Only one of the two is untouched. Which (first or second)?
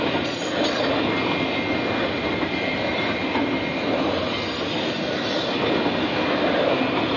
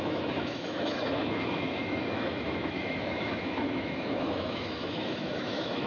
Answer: first